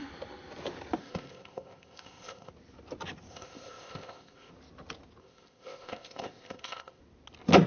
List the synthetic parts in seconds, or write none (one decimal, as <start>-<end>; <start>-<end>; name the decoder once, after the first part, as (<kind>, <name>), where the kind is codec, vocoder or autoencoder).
1.0-2.5 (codec, ZipCodec); 3.3-4.5; 5.2-7.0